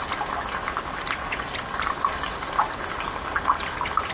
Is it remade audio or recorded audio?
recorded